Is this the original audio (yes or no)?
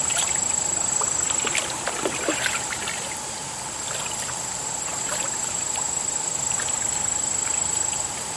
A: no